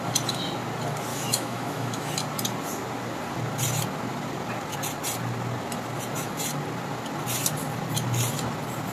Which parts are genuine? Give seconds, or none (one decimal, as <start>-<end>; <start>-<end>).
0.0-1.1; 2.1-8.9